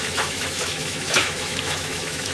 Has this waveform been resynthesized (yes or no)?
yes